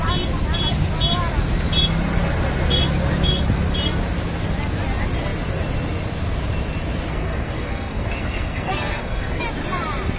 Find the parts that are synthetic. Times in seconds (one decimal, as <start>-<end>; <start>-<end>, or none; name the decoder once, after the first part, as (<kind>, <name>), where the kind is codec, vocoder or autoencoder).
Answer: 7.1-9.4 (codec, SNAC)